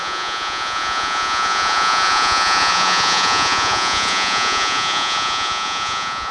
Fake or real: fake